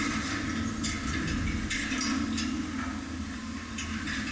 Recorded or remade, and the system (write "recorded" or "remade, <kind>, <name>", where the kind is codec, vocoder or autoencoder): recorded